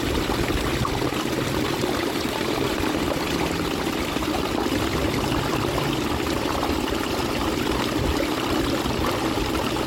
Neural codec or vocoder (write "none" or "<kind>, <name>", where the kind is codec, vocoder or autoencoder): vocoder, BigVGAN v2